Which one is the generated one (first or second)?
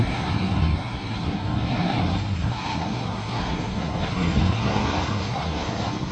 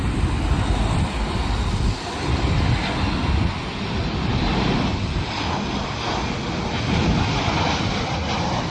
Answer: first